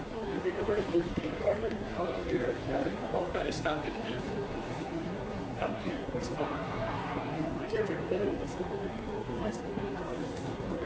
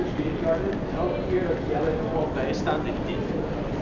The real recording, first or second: second